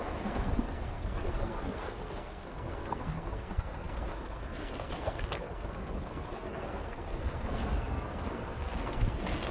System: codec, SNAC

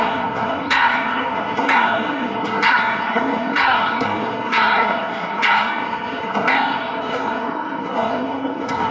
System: codec, SNAC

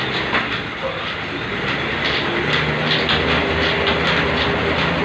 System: none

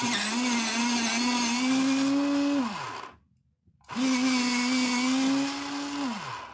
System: none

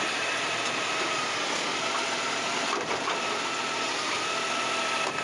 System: none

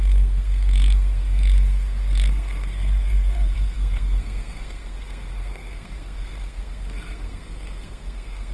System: codec, SNAC